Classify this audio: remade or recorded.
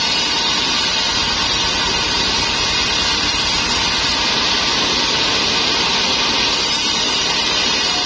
recorded